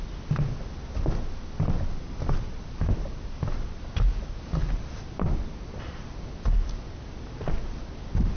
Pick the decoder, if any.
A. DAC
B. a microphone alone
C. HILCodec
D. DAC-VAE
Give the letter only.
B